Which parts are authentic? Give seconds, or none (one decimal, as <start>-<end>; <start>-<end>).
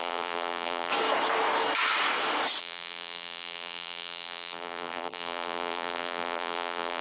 0.9-2.6